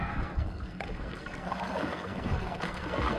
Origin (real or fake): fake